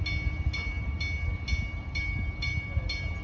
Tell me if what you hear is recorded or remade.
recorded